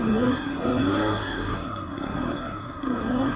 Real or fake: fake